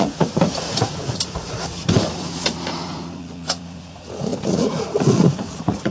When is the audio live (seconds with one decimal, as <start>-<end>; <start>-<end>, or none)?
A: none